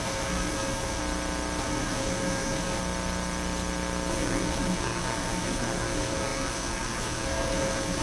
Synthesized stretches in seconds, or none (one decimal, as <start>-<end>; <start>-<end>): 0.0-1.0; 1.6-2.8; 4.1-8.0